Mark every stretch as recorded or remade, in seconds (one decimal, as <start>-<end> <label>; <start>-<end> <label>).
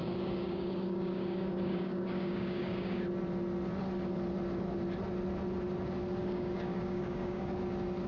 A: 0.0-3.0 remade; 3.0-6.2 recorded; 6.2-7.5 remade; 7.5-8.1 recorded